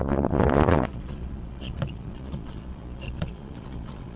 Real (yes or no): no